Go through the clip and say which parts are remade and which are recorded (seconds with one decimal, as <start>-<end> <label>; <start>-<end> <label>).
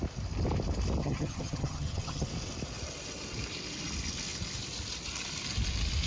0.0-1.0 recorded; 1.0-2.3 remade; 2.3-6.1 recorded